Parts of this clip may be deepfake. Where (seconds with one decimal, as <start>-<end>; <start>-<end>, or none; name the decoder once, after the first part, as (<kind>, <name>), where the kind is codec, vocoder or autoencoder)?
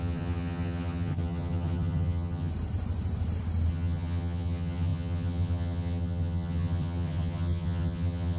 0.0-2.5 (vocoder, HiFi-GAN); 3.7-8.4